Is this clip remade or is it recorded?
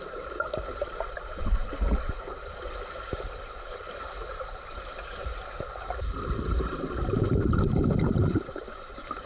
remade